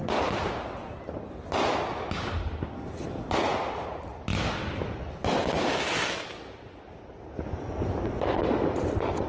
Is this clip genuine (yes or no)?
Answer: yes